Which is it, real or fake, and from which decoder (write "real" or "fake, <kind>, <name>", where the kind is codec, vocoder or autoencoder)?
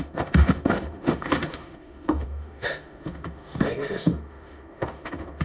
fake, autoencoder, DAC-VAE